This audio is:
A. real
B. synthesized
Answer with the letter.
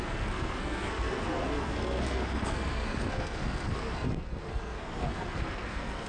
B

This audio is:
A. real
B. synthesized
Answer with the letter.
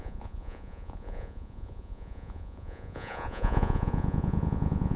B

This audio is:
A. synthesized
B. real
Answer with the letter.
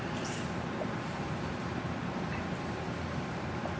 B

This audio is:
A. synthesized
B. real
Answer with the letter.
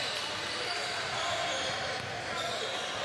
B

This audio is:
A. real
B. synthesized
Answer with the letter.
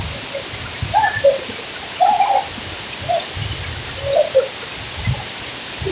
A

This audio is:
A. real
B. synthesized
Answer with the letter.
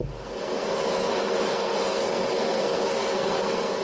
B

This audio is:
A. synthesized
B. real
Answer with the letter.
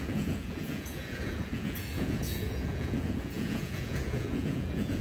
A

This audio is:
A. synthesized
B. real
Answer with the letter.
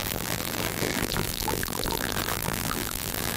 A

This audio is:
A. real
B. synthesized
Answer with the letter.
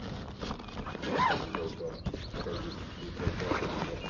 A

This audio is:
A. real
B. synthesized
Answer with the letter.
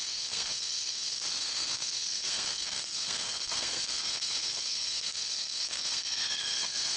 B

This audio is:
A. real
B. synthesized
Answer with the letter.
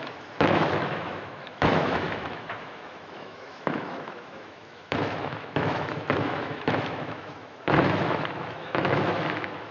B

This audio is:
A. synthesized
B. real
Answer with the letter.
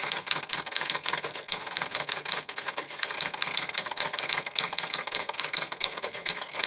A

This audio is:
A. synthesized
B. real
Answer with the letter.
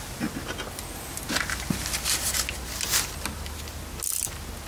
B